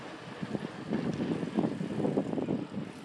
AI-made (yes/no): no